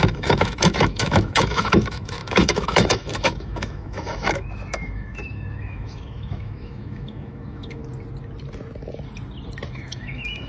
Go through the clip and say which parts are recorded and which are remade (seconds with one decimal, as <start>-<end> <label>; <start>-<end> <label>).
0.0-7.8 remade; 7.8-9.7 recorded; 9.7-10.5 remade